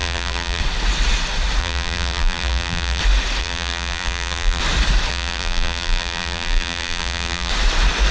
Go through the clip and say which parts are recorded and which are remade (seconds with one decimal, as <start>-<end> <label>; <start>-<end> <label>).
0.0-0.6 remade; 0.6-1.6 recorded; 1.6-3.0 remade; 3.0-3.4 recorded; 3.4-4.6 remade; 4.6-5.1 recorded; 5.1-7.5 remade; 7.5-8.1 recorded